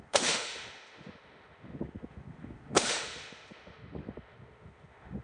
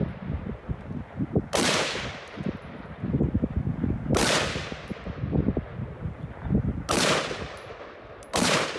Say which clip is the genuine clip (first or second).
second